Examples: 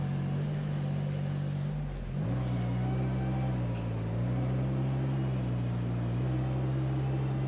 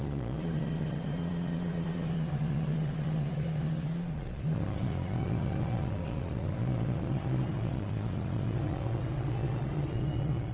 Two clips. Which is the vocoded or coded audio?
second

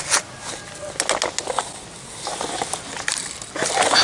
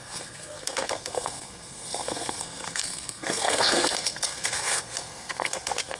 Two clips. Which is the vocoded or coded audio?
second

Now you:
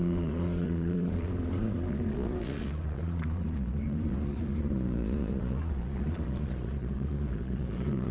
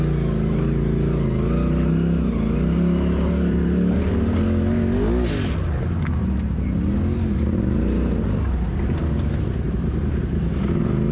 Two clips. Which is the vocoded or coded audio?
first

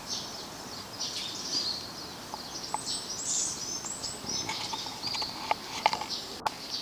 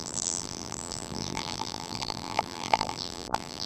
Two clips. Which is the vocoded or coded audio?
second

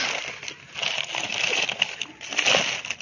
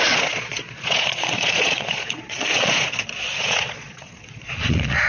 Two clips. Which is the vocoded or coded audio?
second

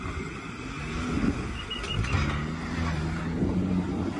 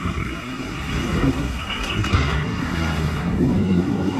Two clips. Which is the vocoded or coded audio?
second